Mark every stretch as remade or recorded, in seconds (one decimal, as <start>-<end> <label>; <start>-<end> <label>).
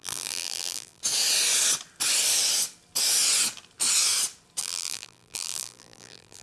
0.0-1.0 remade; 1.0-4.6 recorded; 4.6-6.4 remade